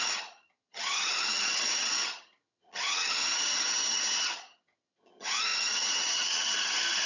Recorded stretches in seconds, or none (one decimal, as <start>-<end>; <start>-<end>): none